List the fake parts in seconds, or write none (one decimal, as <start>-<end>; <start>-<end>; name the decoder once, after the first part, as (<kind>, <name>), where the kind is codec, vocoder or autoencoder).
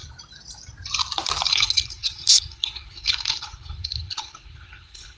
1.5-5.2 (codec, HILCodec)